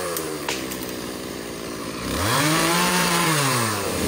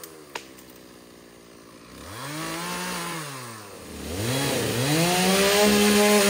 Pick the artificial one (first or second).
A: first